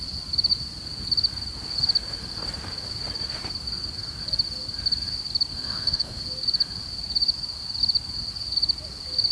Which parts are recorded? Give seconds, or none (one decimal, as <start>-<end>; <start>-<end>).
0.0-5.5; 6.2-9.3